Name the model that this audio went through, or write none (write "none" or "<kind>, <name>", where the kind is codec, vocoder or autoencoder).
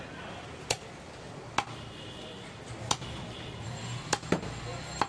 none